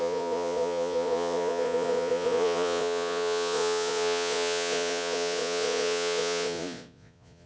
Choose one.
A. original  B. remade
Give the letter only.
B